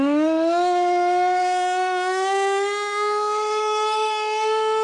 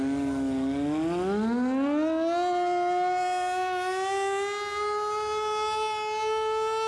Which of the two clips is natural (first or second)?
second